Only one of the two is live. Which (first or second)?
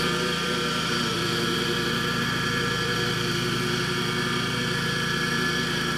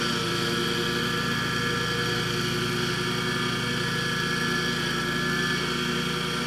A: second